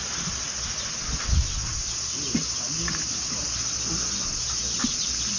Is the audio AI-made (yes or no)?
no